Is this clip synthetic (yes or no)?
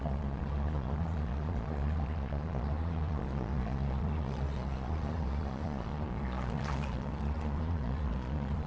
yes